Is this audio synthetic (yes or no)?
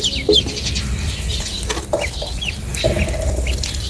no